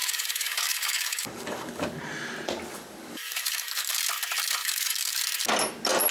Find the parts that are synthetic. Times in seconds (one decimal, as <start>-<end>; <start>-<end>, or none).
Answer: 0.0-2.0; 2.7-4.0; 4.6-5.2